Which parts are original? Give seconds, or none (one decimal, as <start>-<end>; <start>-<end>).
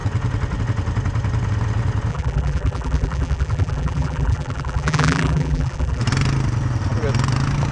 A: 0.0-2.1; 6.0-7.7